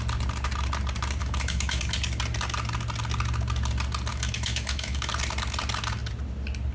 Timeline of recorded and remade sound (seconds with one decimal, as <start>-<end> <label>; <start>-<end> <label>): 0.0-1.2 recorded; 1.2-1.8 remade; 1.8-4.1 recorded; 4.1-5.1 remade; 5.1-6.7 recorded